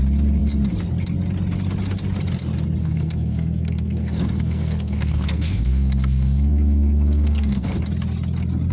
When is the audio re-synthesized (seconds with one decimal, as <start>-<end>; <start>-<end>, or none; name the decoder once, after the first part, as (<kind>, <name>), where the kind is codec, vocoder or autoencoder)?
2.8-7.8 (codec, SNAC)